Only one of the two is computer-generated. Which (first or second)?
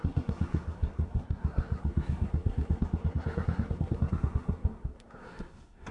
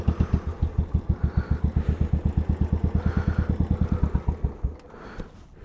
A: first